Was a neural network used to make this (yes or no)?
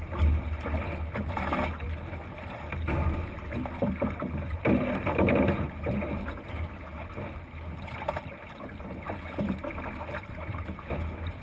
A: no